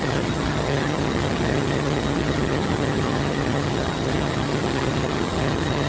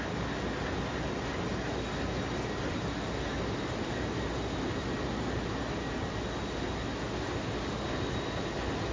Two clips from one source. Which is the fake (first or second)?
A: first